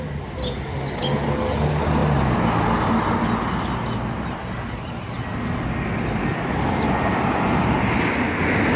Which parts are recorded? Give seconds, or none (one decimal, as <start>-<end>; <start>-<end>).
0.0-8.8